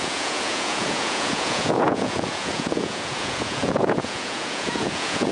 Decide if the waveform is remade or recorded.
remade